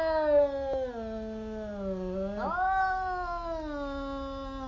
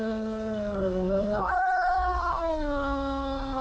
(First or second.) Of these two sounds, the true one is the first